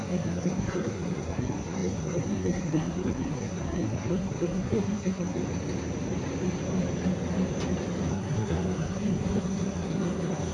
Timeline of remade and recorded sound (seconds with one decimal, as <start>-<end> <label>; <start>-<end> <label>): 0.0-5.4 remade; 5.4-8.1 recorded; 8.1-10.5 remade